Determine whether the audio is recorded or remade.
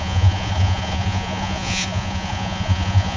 remade